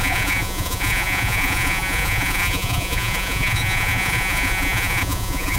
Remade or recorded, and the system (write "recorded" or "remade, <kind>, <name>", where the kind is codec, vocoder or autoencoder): remade, vocoder, Vocos